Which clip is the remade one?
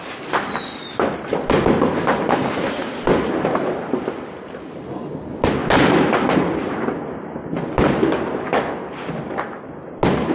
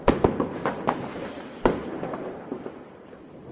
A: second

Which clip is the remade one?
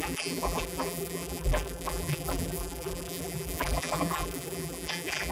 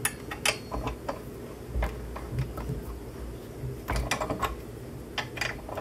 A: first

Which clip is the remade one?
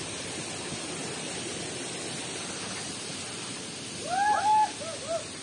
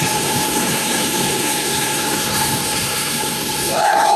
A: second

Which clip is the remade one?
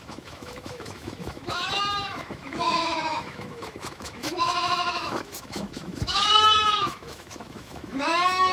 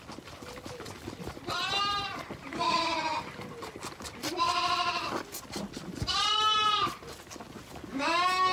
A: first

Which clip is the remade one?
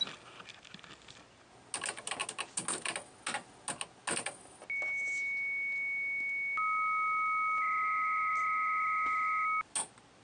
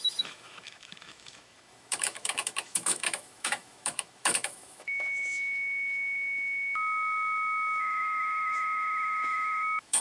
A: second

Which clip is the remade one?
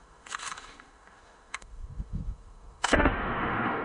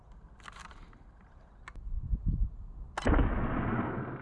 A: first